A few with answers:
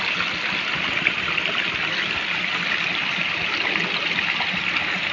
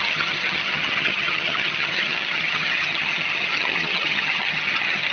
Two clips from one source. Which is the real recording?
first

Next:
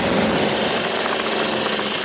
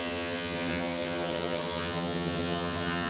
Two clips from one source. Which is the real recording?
first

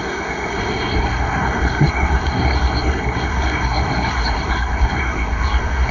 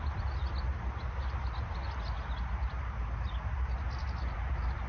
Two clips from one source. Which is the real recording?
second